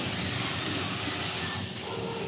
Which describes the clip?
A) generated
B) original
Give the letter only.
B